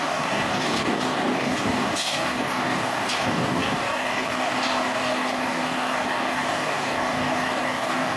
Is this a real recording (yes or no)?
no